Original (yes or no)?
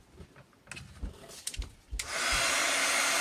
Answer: yes